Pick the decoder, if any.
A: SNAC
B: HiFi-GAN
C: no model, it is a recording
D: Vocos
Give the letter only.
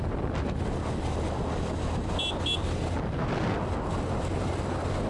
C